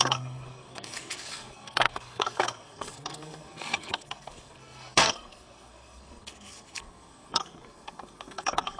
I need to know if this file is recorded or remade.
remade